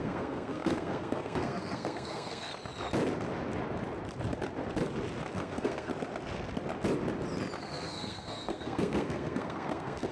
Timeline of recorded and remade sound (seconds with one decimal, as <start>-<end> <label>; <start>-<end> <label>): 0.0-2.5 remade; 2.5-5.3 recorded; 5.3-5.9 remade; 5.9-7.6 recorded; 7.6-10.1 remade